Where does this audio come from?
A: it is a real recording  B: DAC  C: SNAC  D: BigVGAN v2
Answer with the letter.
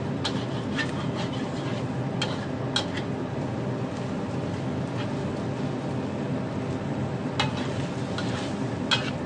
A